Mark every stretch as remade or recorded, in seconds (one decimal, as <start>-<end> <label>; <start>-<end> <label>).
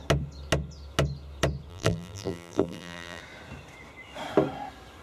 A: 0.0-1.7 recorded; 1.7-3.2 remade; 3.2-5.0 recorded